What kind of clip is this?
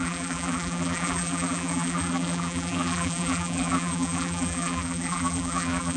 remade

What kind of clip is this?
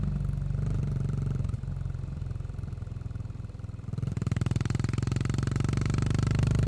remade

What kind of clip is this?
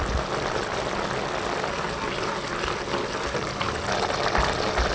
recorded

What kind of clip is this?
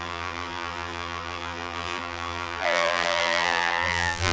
remade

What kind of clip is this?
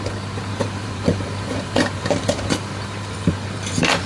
remade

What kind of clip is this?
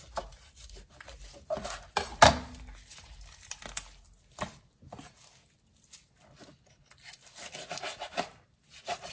recorded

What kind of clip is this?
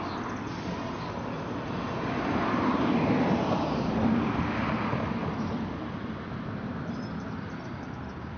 remade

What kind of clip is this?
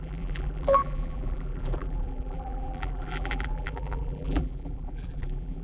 remade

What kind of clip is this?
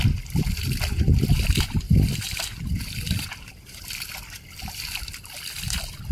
remade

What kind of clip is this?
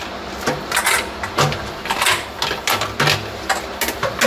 recorded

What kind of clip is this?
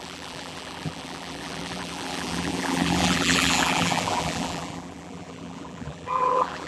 remade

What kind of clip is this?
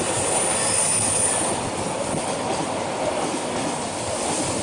recorded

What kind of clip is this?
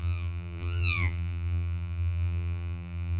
remade